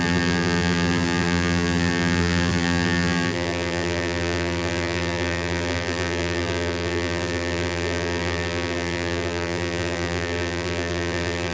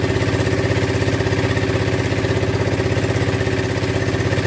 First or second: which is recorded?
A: second